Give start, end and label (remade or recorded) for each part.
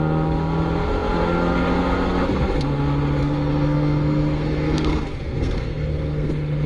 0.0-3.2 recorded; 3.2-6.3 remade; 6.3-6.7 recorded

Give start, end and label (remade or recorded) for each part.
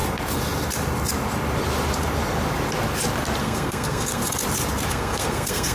0.0-3.4 recorded; 3.4-4.2 remade; 4.2-4.9 recorded; 4.9-5.7 remade